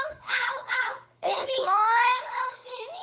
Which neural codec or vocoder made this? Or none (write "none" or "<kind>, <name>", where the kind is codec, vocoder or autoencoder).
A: codec, HILCodec